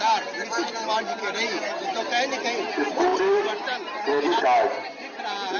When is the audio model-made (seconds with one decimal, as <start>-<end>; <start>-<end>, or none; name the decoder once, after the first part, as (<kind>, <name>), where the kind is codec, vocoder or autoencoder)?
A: 3.1-4.4 (vocoder, BigVGAN v2)